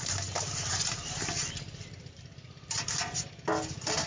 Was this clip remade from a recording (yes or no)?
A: yes